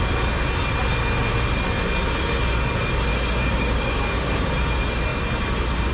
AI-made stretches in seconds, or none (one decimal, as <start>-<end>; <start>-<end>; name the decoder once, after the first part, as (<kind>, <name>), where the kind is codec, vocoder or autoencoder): 3.1-4.5 (codec, DAC)